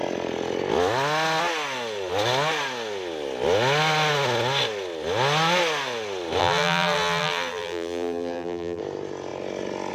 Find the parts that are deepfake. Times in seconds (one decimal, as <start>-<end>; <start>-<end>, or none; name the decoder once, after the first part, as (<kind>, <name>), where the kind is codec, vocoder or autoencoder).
6.4-8.8 (vocoder, BigVGAN v2)